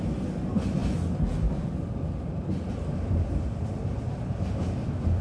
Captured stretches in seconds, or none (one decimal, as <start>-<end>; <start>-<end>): 0.0-5.2

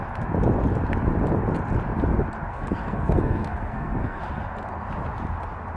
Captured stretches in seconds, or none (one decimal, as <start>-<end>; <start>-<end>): 0.0-2.5; 4.2-5.8

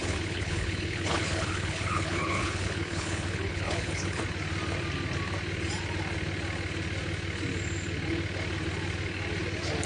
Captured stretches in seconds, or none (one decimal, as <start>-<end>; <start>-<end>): 4.2-9.9